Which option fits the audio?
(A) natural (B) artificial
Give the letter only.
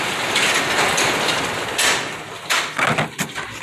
A